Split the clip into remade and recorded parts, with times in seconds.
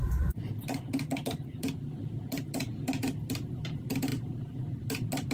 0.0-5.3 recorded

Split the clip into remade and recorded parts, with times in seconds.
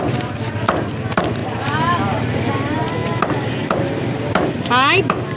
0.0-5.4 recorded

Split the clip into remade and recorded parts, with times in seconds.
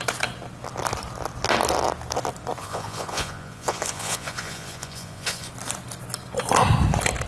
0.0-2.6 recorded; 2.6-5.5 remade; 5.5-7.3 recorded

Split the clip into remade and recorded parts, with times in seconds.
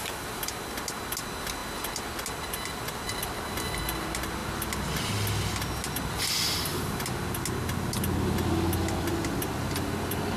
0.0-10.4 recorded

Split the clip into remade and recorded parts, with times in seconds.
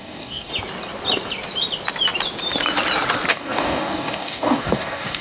0.0-0.5 remade; 0.5-3.3 recorded; 3.3-5.2 remade